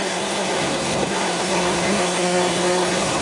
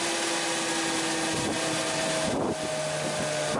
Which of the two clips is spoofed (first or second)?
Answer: first